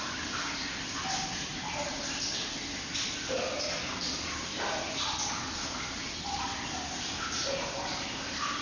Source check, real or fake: real